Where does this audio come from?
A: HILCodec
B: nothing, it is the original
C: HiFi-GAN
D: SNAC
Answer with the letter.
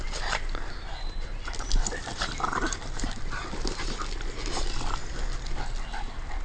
B